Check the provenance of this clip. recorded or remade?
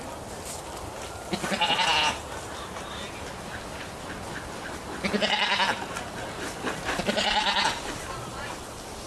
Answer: recorded